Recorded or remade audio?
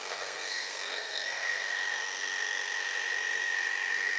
remade